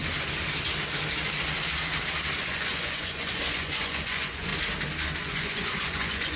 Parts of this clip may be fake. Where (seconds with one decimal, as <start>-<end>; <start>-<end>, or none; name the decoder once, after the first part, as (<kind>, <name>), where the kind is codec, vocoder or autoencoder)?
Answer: 2.4-4.5 (vocoder, Vocos); 5.2-6.4